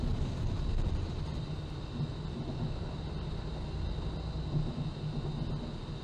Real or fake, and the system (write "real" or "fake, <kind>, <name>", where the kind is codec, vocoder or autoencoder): real